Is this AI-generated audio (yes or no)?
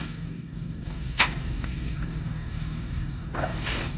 yes